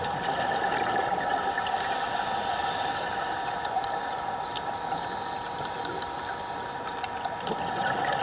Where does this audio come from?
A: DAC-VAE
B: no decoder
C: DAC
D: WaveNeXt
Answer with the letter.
B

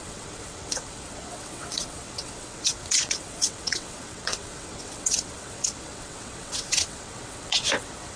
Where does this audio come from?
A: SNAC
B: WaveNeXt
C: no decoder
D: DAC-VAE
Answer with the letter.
B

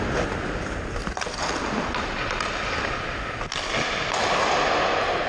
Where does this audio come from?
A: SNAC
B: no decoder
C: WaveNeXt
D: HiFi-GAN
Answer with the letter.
B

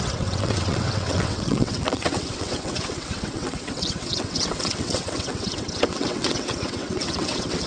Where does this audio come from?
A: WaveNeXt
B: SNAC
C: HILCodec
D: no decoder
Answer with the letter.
A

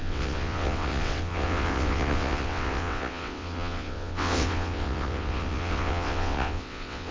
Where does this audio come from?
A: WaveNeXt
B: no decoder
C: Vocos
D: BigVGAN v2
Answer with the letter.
A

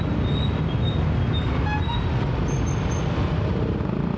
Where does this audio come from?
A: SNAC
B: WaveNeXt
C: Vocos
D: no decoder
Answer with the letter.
D